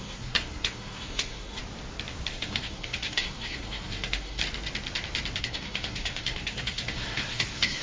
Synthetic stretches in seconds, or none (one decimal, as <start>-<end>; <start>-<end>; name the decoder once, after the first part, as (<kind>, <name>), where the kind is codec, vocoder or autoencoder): 0.0-1.6 (codec, SNAC); 2.3-4.4; 5.4-7.8